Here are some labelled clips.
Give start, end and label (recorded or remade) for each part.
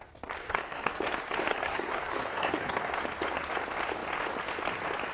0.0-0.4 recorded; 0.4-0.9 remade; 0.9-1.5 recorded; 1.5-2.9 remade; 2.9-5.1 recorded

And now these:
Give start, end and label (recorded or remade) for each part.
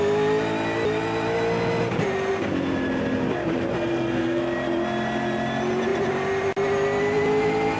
0.0-3.7 recorded; 3.7-4.4 remade; 4.4-7.8 recorded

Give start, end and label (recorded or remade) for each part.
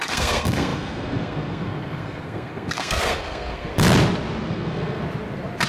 0.0-3.7 remade; 3.7-4.5 recorded; 4.5-5.0 remade; 5.0-5.7 recorded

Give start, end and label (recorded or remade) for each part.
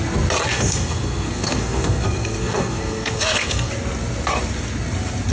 0.0-0.5 recorded; 0.5-3.7 remade; 3.7-5.3 recorded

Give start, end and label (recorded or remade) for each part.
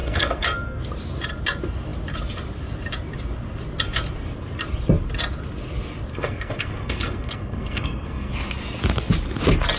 0.0-0.8 remade; 0.8-6.1 recorded; 6.1-8.3 remade; 8.3-9.8 recorded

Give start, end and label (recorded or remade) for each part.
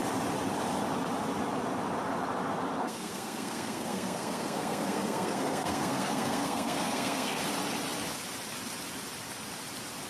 0.0-2.8 recorded; 2.8-7.4 remade; 7.4-10.1 recorded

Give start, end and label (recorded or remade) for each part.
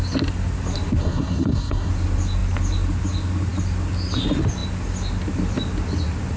0.0-1.0 recorded; 1.0-1.9 remade; 1.9-6.4 recorded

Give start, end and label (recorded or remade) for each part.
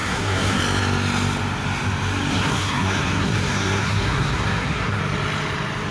0.0-0.6 remade; 0.6-2.3 recorded; 2.3-5.0 remade; 5.0-5.9 recorded